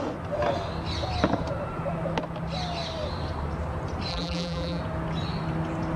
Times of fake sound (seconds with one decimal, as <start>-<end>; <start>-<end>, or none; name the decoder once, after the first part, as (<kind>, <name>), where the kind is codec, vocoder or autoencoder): 4.1-4.8 (vocoder, BigVGAN v2)